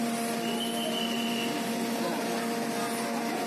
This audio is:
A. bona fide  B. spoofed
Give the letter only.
A